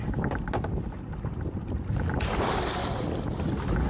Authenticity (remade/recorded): recorded